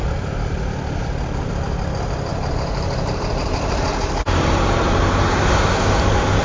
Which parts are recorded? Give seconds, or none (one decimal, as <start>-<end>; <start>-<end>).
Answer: 0.0-2.3; 5.5-6.4